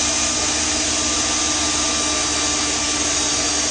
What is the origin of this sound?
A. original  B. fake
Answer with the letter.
A